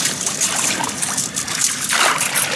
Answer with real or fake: real